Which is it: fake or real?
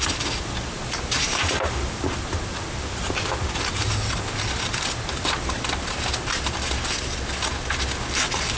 real